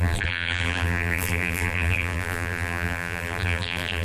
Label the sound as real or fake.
fake